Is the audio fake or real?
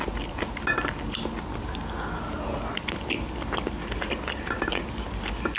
real